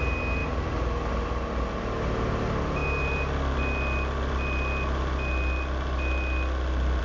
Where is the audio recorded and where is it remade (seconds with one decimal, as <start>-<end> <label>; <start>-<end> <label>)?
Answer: 0.0-7.0 recorded